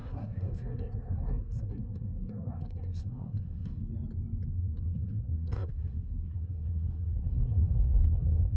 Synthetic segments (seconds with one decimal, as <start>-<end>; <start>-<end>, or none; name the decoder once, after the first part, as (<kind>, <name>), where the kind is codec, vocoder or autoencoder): 0.0-3.8 (codec, SNAC); 4.6-8.6

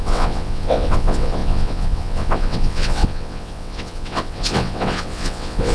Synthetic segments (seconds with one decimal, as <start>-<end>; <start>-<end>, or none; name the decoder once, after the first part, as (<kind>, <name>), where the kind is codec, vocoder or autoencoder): 0.0-5.7 (vocoder, WaveNeXt)

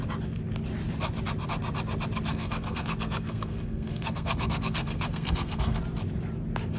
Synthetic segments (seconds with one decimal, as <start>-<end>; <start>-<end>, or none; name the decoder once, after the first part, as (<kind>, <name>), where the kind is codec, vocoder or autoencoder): 2.3-5.8 (codec, SNAC)

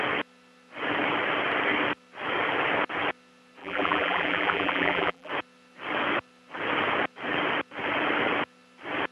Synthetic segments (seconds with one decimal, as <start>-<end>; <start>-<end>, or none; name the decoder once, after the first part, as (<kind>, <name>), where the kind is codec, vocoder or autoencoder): 3.6-5.3 (vocoder, BigVGAN v2)

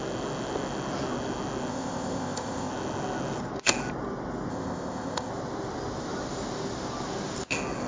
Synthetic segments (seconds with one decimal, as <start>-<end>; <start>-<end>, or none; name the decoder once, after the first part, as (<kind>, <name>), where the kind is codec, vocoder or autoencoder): 1.7-2.7 (codec, ZipCodec); 4.5-5.3

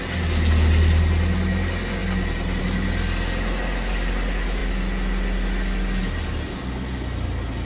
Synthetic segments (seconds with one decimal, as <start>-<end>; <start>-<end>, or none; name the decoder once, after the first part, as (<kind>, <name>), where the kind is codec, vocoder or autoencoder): none

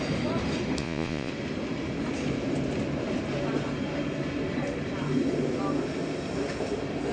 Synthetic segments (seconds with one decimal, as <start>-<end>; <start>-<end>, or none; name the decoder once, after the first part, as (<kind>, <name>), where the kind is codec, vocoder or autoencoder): 0.8-1.3 (vocoder, Vocos)

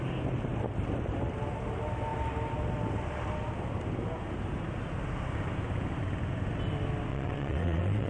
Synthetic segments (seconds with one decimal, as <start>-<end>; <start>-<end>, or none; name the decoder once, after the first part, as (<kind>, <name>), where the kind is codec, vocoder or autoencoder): 7.1-8.1 (vocoder, WaveNeXt)